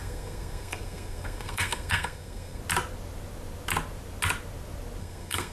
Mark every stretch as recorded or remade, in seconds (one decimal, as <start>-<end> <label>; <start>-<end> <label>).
0.0-2.6 remade; 2.6-5.0 recorded; 5.0-5.5 remade